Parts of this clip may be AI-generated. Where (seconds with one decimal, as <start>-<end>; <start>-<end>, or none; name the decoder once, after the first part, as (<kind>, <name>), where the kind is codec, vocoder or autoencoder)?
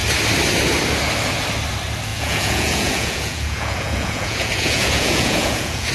2.1-5.9 (vocoder, Vocos)